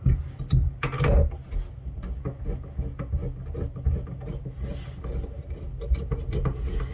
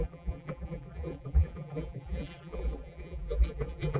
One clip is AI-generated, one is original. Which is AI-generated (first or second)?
second